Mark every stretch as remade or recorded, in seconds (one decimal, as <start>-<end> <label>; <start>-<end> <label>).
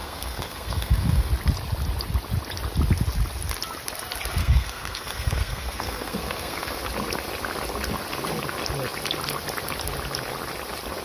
0.0-1.3 remade; 1.3-4.4 recorded; 4.4-6.8 remade; 6.8-11.0 recorded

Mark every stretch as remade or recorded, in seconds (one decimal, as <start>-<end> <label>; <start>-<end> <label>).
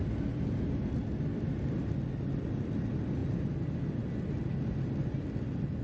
0.0-5.8 recorded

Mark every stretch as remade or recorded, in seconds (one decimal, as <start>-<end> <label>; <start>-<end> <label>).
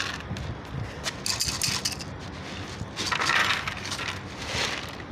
0.0-3.4 recorded; 3.4-4.0 remade; 4.0-5.1 recorded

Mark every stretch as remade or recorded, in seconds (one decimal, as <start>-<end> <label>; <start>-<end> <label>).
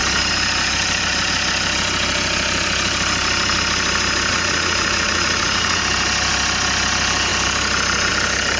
0.0-4.3 recorded; 4.3-5.8 remade; 5.8-8.6 recorded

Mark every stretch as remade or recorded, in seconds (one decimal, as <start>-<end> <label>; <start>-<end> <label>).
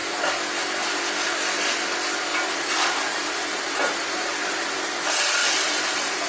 0.0-2.3 recorded; 2.3-6.3 remade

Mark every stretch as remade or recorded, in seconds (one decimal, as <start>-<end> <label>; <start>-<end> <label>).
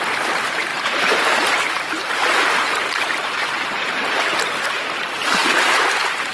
0.0-0.7 recorded; 0.7-4.5 remade; 4.5-6.3 recorded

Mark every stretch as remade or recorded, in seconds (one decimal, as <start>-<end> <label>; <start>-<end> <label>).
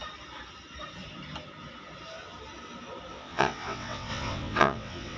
0.0-3.1 recorded; 3.1-5.2 remade